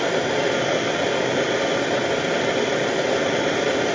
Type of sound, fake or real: real